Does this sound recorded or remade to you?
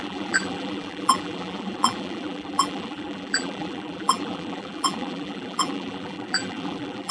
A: remade